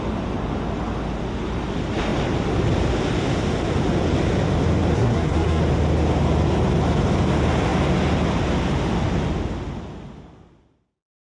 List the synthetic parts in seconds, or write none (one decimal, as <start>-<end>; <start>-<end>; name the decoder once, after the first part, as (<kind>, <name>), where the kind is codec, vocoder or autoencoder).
4.9-5.6 (codec, SNAC)